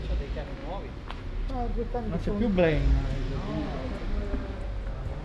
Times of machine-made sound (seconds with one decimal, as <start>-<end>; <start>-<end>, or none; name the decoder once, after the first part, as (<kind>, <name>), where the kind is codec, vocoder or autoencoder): none